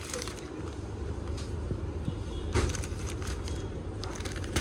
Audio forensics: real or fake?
fake